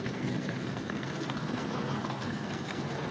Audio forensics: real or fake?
fake